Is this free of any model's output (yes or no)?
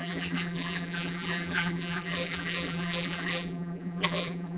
no